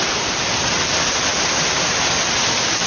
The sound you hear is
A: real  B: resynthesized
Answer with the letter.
A